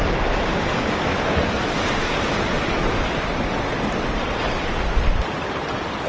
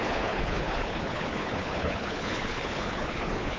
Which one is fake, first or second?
second